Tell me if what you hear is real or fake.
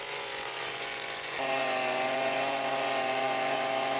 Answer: fake